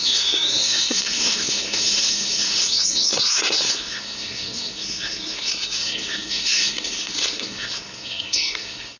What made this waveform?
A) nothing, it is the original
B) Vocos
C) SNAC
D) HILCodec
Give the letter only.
C